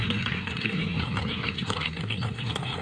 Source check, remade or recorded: remade